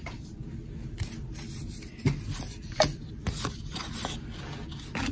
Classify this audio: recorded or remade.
recorded